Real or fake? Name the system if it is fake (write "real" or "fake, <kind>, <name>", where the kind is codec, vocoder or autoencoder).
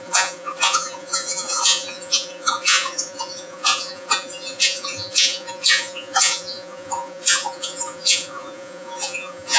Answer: fake, vocoder, Vocos